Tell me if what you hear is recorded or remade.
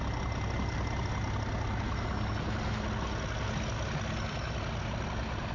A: recorded